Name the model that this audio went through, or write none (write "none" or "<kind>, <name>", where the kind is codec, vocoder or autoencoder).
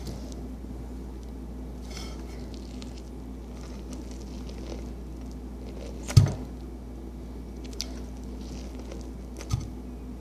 none